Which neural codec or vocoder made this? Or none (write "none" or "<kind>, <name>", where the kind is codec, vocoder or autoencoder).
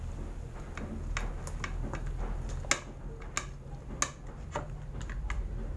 none